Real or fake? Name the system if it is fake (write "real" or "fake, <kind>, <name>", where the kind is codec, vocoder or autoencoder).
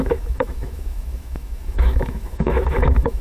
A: fake, autoencoder, DAC-VAE